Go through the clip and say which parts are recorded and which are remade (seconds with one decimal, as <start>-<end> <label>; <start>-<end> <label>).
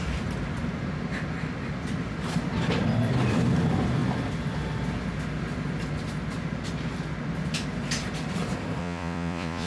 0.0-8.8 recorded; 8.8-9.7 remade